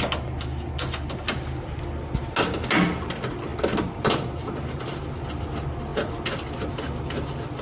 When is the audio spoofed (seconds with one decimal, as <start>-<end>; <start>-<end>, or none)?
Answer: none